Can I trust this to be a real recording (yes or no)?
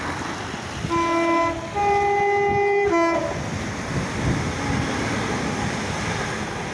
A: yes